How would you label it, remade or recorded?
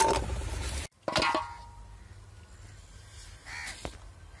recorded